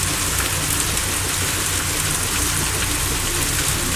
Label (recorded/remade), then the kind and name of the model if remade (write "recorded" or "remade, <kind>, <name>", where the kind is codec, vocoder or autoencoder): recorded